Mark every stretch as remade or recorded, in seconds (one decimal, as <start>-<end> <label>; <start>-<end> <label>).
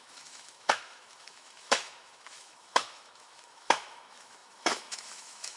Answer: 0.0-5.6 remade